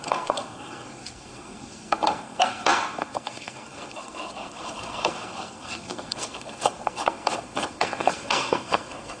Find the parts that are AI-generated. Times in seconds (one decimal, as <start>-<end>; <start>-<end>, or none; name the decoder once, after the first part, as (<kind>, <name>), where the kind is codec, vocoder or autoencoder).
0.0-9.2 (codec, SNAC)